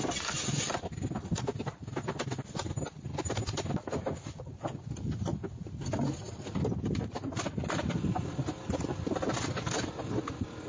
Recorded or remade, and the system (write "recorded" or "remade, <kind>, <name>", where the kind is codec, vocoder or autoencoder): recorded